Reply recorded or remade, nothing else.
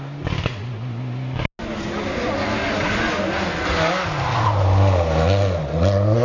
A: recorded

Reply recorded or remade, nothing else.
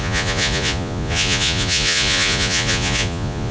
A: remade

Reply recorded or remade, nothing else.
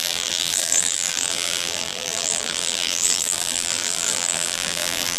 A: remade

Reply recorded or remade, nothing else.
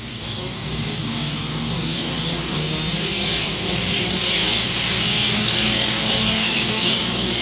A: remade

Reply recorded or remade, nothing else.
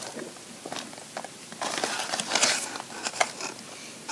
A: recorded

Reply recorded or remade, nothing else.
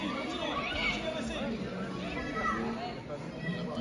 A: recorded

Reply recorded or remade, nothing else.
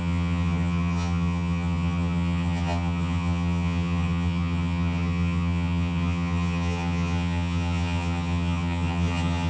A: remade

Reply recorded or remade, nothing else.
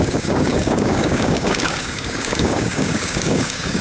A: remade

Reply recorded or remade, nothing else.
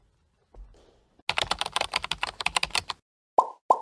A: recorded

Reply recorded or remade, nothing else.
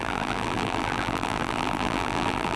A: remade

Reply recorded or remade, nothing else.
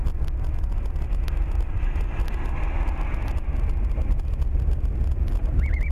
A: recorded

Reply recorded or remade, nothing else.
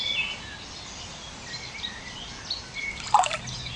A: recorded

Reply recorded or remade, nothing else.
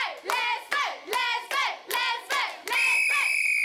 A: recorded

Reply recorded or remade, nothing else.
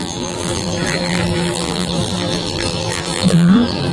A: remade